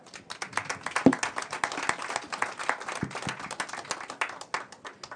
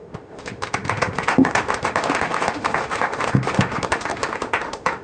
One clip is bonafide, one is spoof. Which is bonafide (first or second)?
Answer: first